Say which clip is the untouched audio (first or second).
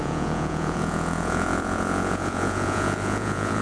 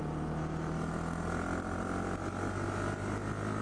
second